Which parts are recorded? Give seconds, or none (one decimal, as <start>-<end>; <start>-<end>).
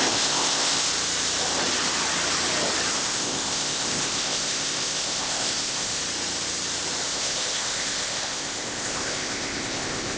0.9-2.9; 6.0-7.1